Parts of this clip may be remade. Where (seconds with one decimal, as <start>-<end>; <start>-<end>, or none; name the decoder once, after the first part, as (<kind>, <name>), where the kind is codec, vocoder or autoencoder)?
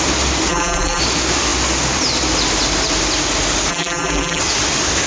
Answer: 0.5-1.0 (vocoder, BigVGAN v2); 3.7-4.4